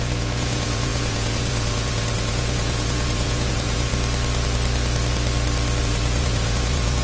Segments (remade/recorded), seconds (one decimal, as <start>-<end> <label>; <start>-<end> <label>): 0.0-3.9 remade; 3.9-5.8 recorded; 5.8-7.0 remade